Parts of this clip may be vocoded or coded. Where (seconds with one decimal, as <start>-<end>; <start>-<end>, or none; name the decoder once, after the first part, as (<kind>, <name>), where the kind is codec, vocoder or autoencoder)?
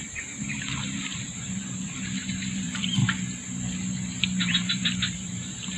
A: 0.0-3.0 (vocoder, BigVGAN v2); 4.4-5.8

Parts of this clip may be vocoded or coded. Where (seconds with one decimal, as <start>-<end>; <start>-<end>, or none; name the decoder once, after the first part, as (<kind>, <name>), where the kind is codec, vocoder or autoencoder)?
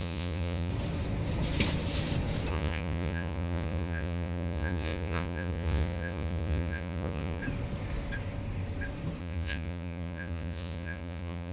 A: 0.0-0.7 (vocoder, Vocos); 2.5-7.4; 9.2-11.5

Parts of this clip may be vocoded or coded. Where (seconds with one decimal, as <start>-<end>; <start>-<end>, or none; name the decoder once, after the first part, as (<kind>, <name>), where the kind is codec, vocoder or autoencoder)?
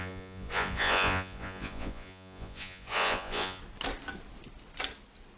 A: 0.0-3.6 (vocoder, Vocos)